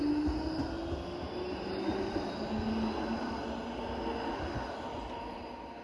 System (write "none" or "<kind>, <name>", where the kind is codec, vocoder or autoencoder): none